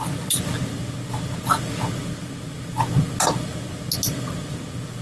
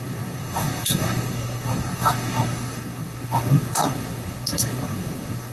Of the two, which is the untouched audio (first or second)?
first